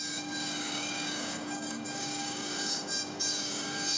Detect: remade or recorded remade